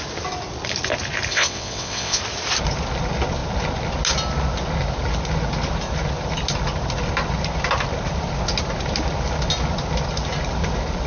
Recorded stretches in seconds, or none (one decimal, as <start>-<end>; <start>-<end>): 0.0-1.3; 2.2-11.1